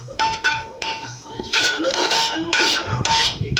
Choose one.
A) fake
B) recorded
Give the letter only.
A